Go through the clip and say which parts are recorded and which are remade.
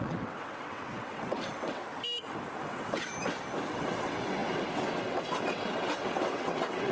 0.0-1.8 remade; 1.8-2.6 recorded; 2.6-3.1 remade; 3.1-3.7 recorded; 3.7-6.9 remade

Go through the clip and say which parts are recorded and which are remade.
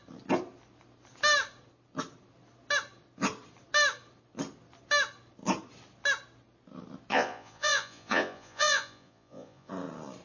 0.0-7.1 recorded; 7.1-9.7 remade; 9.7-10.2 recorded